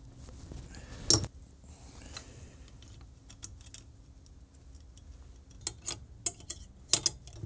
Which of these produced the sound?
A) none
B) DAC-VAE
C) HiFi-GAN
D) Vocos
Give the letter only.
A